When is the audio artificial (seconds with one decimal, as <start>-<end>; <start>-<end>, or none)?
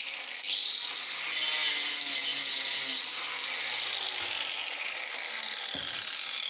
none